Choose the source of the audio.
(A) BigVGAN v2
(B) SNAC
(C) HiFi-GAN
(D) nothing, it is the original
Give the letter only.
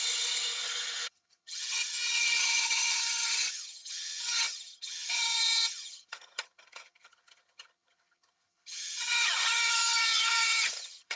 C